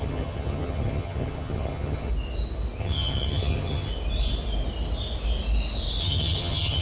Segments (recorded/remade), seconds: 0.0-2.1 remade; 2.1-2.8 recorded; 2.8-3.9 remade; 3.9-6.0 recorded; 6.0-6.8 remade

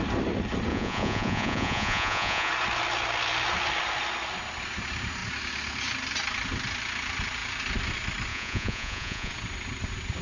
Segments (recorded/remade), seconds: 0.0-0.7 recorded; 0.7-2.5 remade; 2.5-8.3 recorded; 8.3-9.3 remade; 9.3-10.2 recorded